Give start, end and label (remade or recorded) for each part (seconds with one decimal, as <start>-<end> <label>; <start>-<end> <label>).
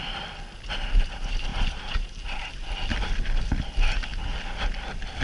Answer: 0.0-1.5 recorded; 1.5-2.4 remade; 2.4-5.2 recorded